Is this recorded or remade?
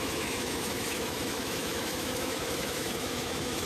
remade